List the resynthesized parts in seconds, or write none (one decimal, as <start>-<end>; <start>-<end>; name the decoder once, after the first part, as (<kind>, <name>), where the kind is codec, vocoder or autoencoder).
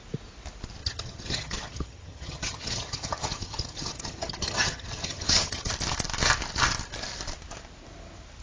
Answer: 0.8-5.7 (vocoder, HiFi-GAN)